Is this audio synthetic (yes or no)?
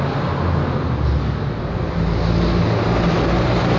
no